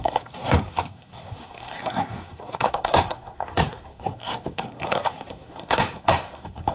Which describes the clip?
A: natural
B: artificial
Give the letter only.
B